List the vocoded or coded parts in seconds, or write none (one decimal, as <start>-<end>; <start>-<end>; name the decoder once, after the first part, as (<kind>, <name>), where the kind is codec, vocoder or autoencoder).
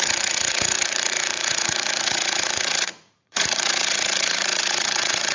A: 0.0-5.3 (vocoder, Vocos)